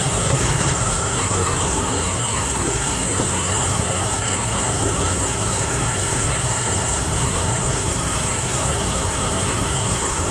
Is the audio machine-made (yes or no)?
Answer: yes